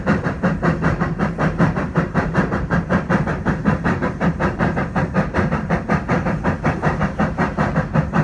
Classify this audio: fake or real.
fake